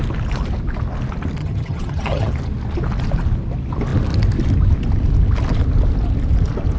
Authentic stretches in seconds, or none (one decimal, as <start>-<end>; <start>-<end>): 0.0-1.4; 2.3-6.8